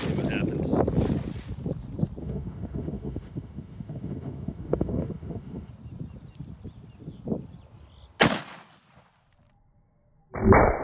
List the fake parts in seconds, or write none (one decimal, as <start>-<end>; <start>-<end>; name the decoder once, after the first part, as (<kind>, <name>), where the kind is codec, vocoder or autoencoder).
2.2-5.7 (autoencoder, DAC-VAE)